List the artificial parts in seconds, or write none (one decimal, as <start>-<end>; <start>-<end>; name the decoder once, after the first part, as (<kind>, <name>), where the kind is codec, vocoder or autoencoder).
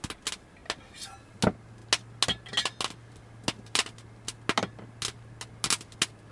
none